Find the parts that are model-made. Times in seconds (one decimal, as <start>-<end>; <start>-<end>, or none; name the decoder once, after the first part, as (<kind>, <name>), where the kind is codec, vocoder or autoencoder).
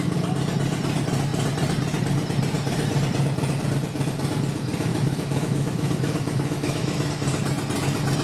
4.9-7.1 (autoencoder, DAC-VAE)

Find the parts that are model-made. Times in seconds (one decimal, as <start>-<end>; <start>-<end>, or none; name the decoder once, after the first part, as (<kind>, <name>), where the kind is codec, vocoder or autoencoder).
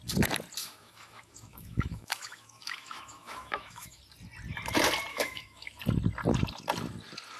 0.6-4.0 (autoencoder, DAC-VAE); 5.1-5.8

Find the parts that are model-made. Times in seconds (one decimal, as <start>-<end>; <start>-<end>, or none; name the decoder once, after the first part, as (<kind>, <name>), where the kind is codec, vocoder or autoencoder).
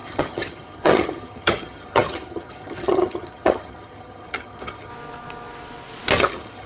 0.0-4.9 (vocoder, HiFi-GAN); 6.2-6.7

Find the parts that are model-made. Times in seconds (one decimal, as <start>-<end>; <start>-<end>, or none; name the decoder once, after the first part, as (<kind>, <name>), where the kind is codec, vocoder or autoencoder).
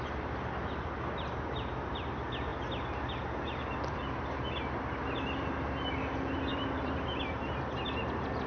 6.5-7.2 (vocoder, BigVGAN v2)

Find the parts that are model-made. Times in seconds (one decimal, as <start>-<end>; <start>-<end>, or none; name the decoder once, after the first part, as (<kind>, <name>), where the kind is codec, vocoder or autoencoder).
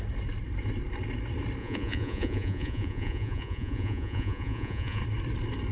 1.6-5.0 (vocoder, Vocos)